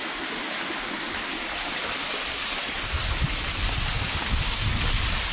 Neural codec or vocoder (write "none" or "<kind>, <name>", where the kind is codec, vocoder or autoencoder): none